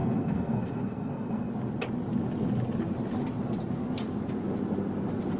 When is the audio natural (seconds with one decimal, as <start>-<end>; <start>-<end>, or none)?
1.5-5.4